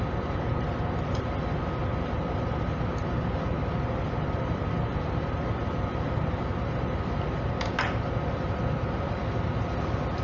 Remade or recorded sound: recorded